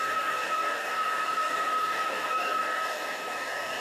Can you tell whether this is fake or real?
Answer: fake